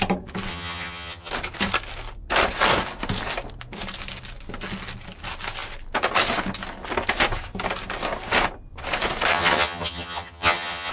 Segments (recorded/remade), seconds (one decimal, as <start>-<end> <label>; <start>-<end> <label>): 0.0-0.5 recorded; 0.5-1.3 remade; 1.3-9.3 recorded; 9.3-10.9 remade